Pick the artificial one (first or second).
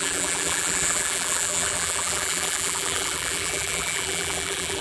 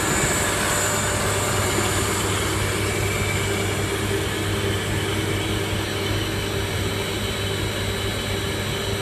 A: first